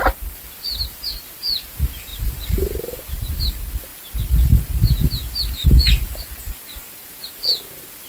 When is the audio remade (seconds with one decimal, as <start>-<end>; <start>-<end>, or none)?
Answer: 2.1-3.4